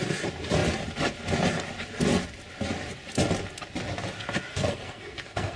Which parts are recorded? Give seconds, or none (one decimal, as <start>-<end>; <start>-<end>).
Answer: 0.0-4.5